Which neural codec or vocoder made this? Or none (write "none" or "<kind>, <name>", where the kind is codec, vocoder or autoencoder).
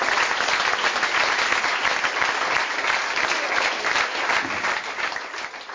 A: none